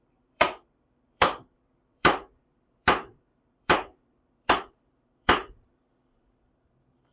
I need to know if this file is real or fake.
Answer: fake